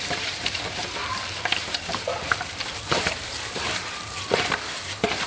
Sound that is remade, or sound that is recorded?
remade